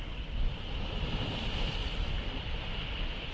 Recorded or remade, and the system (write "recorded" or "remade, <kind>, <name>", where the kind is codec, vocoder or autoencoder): recorded